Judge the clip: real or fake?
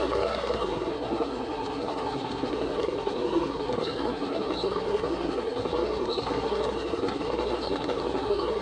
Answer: fake